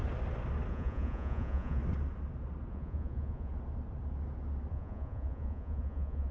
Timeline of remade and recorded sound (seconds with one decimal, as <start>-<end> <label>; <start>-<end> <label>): 0.0-0.7 recorded; 0.7-1.8 remade; 1.8-2.7 recorded; 2.7-3.5 remade; 3.5-4.7 recorded; 4.7-6.3 remade